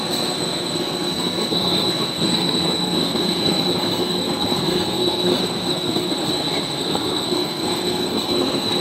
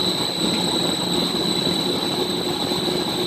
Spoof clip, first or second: first